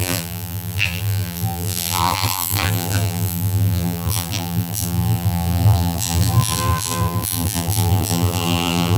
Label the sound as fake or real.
fake